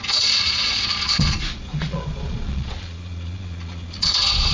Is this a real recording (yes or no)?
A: no